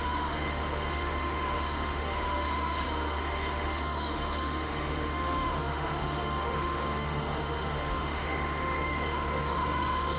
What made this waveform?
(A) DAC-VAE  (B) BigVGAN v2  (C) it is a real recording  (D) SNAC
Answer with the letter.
A